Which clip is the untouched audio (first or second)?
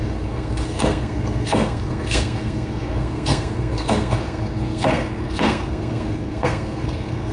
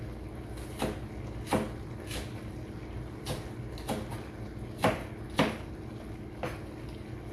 second